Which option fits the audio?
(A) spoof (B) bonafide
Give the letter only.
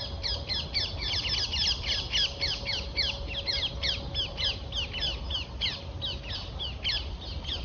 B